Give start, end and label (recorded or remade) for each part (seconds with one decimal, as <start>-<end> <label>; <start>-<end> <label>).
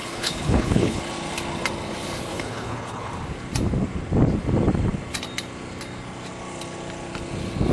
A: 0.0-1.0 remade; 1.0-2.3 recorded; 2.3-3.1 remade; 3.1-7.7 recorded